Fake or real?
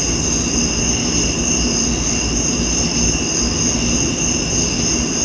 real